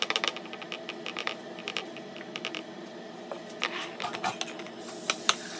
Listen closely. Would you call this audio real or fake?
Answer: real